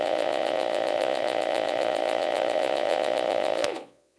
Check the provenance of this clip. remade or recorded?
remade